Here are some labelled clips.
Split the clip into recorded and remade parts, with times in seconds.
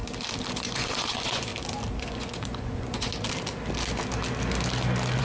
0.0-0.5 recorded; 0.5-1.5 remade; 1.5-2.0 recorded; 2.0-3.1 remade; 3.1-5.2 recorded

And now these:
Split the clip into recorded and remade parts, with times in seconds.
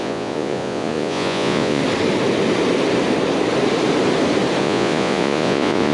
0.0-1.8 remade; 1.8-4.6 recorded; 4.6-5.9 remade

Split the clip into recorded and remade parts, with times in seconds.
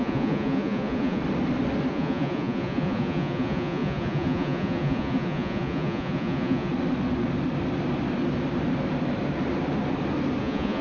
0.0-1.2 remade; 1.2-1.9 recorded; 1.9-6.7 remade; 6.7-10.4 recorded; 10.4-10.8 remade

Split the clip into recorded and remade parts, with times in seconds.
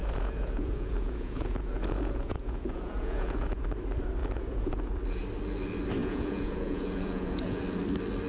0.0-3.6 remade; 3.6-4.2 recorded; 4.2-4.9 remade; 4.9-6.0 recorded; 6.0-7.6 remade; 7.6-8.3 recorded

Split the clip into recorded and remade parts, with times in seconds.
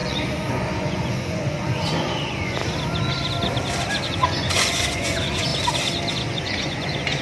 0.0-2.6 remade; 2.6-4.1 recorded; 4.1-5.5 remade; 5.5-6.1 recorded; 6.1-7.2 remade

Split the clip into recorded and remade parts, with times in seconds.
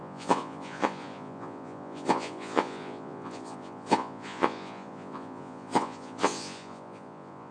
0.0-7.5 remade